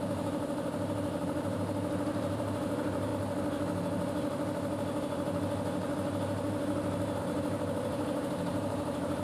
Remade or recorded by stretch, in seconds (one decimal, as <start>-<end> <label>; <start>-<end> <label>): 0.0-3.1 remade; 3.1-7.2 recorded; 7.2-9.2 remade